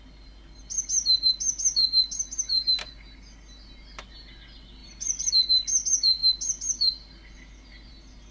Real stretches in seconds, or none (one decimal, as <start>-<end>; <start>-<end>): 0.0-4.8; 5.3-8.3